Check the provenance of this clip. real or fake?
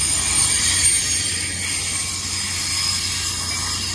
real